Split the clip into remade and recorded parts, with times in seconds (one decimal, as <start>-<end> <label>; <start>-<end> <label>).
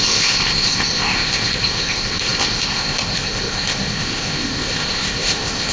0.0-5.7 remade